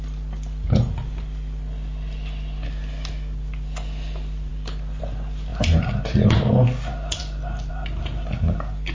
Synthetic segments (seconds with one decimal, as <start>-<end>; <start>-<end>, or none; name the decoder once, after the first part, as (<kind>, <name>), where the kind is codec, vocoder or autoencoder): 5.5-6.5 (vocoder, BigVGAN v2)